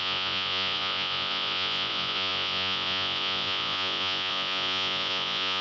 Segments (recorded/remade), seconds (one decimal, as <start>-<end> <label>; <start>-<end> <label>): 0.0-5.6 remade